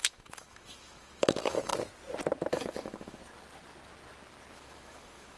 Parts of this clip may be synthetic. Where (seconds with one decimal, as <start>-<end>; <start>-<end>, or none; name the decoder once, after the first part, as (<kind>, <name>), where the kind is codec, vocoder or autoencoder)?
0.0-1.7 (autoencoder, DAC-VAE); 2.5-3.2; 4.5-5.4